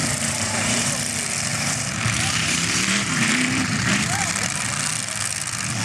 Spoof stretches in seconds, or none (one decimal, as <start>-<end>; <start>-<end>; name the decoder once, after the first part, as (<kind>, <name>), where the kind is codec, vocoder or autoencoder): 0.0-0.9 (vocoder, BigVGAN v2); 1.5-4.3